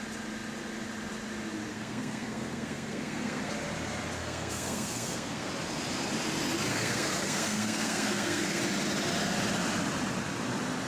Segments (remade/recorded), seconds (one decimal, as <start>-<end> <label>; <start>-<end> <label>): 0.0-1.7 recorded; 1.7-3.5 remade; 3.5-4.2 recorded; 4.2-5.5 remade; 5.5-6.7 recorded; 6.7-8.6 remade; 8.6-10.9 recorded